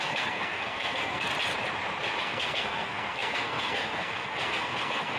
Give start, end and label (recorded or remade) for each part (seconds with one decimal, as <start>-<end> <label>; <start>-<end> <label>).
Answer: 0.0-1.3 remade; 1.3-2.2 recorded; 2.2-5.2 remade